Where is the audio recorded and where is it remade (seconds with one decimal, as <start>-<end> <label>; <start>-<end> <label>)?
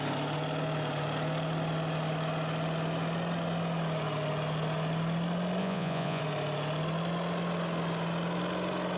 0.0-5.6 recorded; 5.6-6.2 remade; 6.2-9.0 recorded